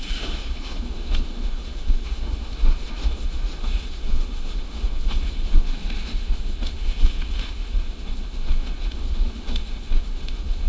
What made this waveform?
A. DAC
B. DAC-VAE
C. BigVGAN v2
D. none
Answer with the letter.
B